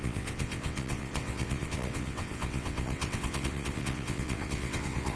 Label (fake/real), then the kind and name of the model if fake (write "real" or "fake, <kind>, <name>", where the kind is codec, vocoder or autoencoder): fake, vocoder, WaveNeXt